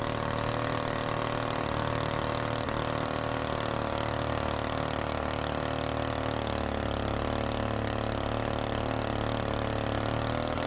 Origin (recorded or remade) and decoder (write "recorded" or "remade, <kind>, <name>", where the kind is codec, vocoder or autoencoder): recorded